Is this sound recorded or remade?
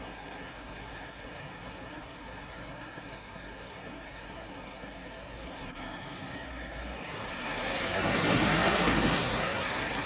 remade